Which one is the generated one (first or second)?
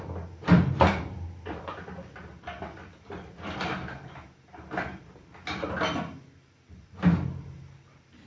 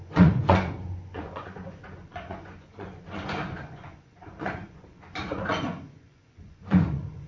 second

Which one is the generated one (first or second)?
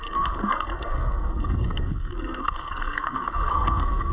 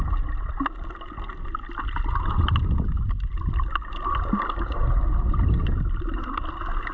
first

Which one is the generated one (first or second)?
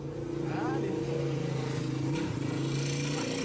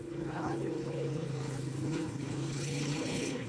second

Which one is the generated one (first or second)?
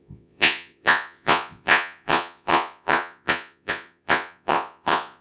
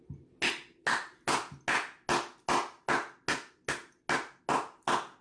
first